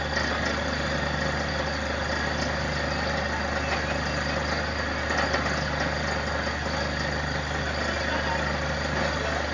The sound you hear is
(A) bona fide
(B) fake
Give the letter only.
A